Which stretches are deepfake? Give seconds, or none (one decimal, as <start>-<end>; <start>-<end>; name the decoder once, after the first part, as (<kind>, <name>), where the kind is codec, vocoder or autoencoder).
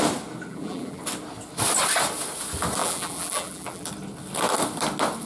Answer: 0.5-1.0 (vocoder, BigVGAN v2); 2.8-3.9